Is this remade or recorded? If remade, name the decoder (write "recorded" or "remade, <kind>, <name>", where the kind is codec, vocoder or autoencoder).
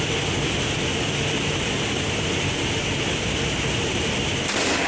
recorded